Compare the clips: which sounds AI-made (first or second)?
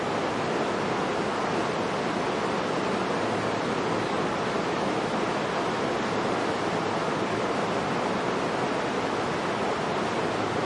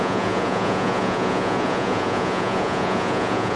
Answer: second